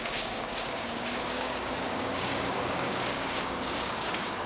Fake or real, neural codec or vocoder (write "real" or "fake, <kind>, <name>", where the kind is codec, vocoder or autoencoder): fake, codec, DAC